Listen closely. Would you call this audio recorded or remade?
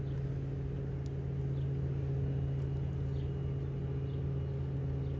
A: recorded